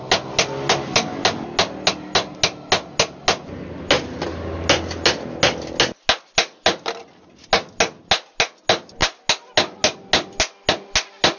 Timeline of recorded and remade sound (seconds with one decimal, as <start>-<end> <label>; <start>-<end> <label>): 0.0-11.4 recorded